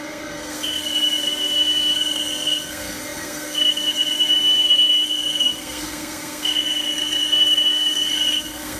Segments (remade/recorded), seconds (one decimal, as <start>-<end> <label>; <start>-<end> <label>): 0.0-8.8 remade